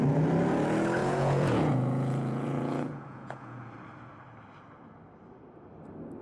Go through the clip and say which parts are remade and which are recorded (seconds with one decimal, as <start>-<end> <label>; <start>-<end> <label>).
0.0-1.0 recorded; 1.0-3.6 remade; 3.6-6.2 recorded